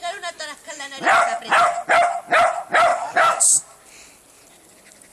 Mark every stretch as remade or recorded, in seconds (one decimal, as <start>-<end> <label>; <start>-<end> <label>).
0.0-2.9 recorded; 2.9-3.4 remade; 3.4-5.1 recorded